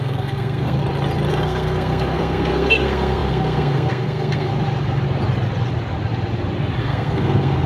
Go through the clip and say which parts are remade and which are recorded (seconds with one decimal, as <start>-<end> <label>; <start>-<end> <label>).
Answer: 0.0-0.8 remade; 0.8-1.3 recorded; 1.3-4.5 remade; 4.5-6.8 recorded; 6.8-7.7 remade